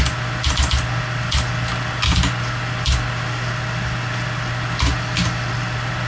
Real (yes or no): yes